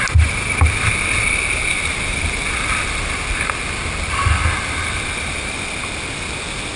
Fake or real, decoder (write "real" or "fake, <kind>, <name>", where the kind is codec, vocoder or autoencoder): real